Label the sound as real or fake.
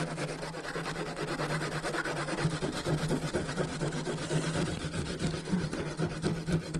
real